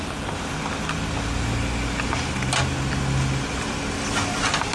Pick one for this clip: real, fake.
real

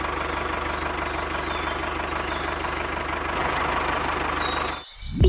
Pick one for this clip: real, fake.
real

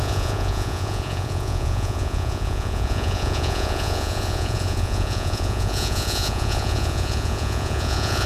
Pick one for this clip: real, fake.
fake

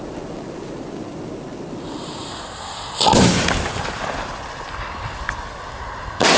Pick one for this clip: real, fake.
real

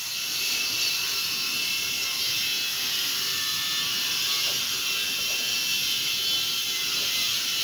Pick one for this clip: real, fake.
fake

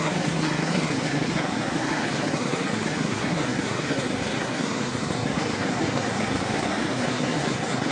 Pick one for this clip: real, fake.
fake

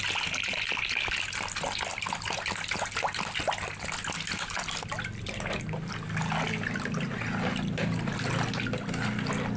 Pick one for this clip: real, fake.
real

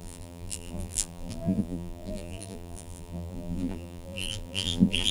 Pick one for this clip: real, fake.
fake